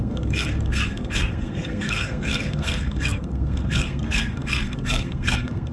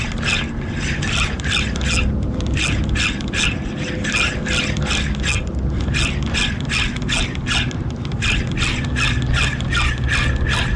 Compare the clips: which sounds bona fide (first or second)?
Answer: second